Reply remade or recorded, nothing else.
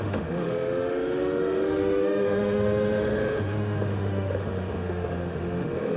remade